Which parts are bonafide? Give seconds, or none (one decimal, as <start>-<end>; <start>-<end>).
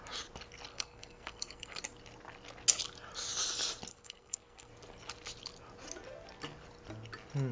0.0-0.7; 1.8-3.9; 4.7-7.5